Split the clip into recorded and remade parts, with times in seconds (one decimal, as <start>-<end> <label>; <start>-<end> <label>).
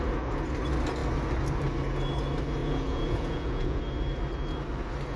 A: 0.0-2.6 recorded; 2.6-3.8 remade; 3.8-5.2 recorded